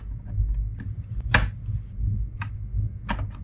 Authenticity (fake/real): real